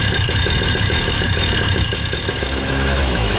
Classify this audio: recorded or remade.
remade